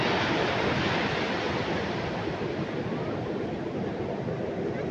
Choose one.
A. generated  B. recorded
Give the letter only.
B